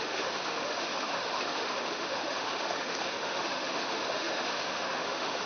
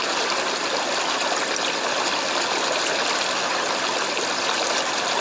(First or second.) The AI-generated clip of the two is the first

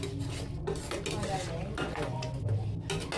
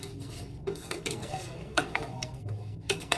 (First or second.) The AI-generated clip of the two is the second